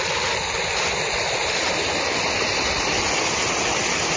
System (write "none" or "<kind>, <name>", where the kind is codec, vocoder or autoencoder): none